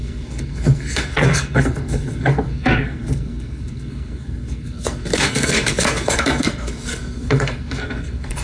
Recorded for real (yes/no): no